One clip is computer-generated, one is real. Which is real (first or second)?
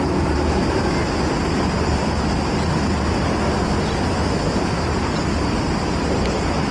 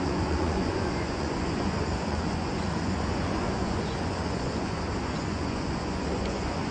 first